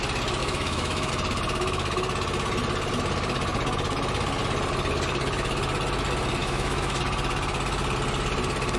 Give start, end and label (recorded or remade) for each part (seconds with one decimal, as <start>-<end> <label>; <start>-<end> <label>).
0.0-0.4 recorded; 0.4-1.1 remade; 1.1-6.4 recorded; 6.4-7.0 remade; 7.0-8.8 recorded